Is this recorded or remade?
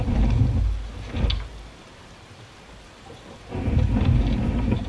recorded